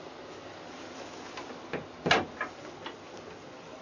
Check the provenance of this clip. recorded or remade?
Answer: recorded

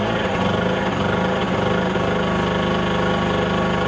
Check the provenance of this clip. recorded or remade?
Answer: recorded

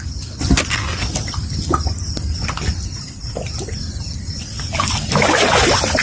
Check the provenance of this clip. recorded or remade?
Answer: recorded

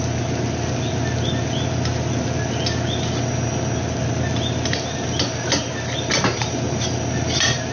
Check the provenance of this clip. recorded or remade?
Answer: recorded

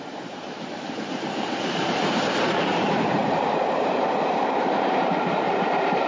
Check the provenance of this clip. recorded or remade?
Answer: remade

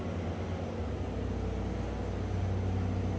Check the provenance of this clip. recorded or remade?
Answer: recorded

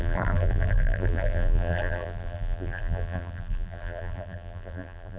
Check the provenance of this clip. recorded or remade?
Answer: remade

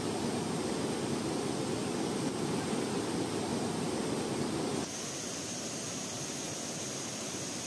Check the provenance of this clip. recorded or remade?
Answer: recorded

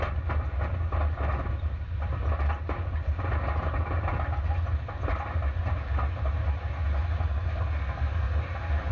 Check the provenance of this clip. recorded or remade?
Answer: recorded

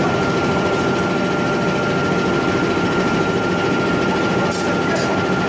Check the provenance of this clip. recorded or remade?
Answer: recorded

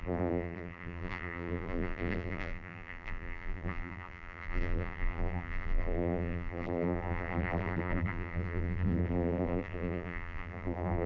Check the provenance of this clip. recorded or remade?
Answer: remade